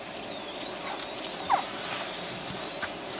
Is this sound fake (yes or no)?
no